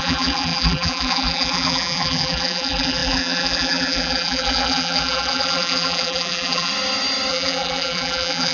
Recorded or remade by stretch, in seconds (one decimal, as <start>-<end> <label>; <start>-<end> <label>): 0.0-6.7 remade; 6.7-7.3 recorded; 7.3-8.5 remade